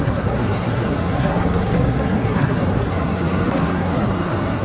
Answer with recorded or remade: remade